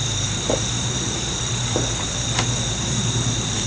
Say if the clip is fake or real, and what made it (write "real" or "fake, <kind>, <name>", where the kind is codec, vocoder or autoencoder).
fake, vocoder, BigVGAN v2